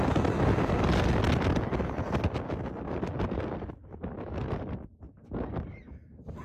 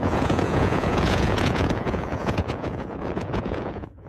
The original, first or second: first